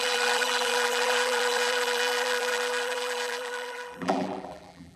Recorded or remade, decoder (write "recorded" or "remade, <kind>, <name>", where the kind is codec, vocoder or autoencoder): remade, vocoder, BigVGAN v2